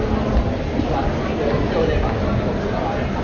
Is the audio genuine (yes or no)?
yes